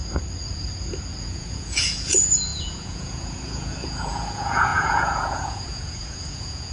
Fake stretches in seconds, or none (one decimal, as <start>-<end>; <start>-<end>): 1.2-6.7